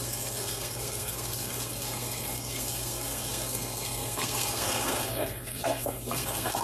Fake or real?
fake